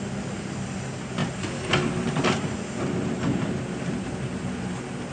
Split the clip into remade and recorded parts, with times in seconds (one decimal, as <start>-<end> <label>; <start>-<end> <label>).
0.0-5.1 recorded